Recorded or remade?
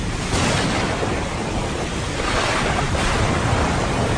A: remade